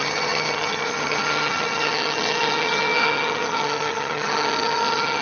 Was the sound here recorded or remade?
remade